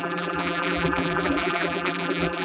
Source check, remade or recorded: remade